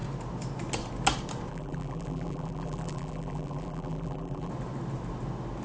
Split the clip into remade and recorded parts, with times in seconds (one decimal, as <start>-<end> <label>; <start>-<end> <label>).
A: 0.0-1.5 recorded; 1.5-4.5 remade; 4.5-5.6 recorded